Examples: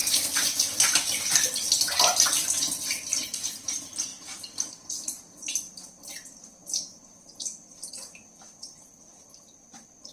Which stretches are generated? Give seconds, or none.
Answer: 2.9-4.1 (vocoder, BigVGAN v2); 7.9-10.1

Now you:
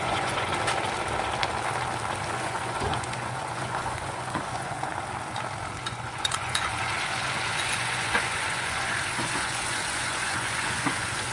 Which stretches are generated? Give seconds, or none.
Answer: 0.0-0.5 (vocoder, Vocos); 2.3-4.9; 5.8-11.3

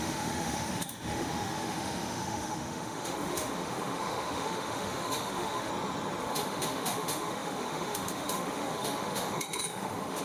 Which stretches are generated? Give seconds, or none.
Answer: 0.0-5.7 (autoencoder, DAC-VAE); 6.2-10.2

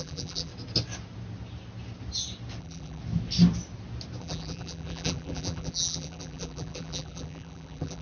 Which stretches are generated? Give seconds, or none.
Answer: 0.0-0.5 (vocoder, BigVGAN v2); 2.6-3.0; 4.2-8.0

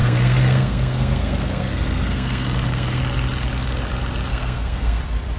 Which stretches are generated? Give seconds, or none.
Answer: 0.0-3.0 (codec, SNAC); 4.3-5.0

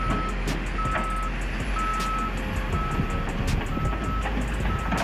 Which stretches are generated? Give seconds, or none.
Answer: none

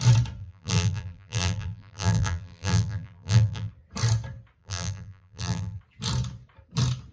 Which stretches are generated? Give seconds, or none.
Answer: 0.4-3.7 (vocoder, BigVGAN v2); 4.6-5.8

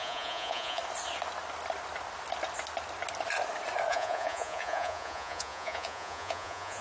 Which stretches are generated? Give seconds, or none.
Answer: 0.0-0.8 (vocoder, Vocos); 3.9-6.8